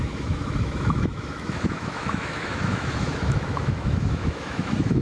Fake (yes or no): yes